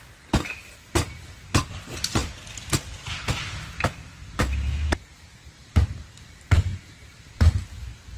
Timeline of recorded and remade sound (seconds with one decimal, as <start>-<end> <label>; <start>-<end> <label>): 0.0-5.1 recorded; 5.1-6.0 remade; 6.0-8.2 recorded